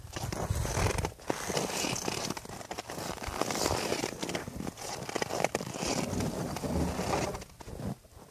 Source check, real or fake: real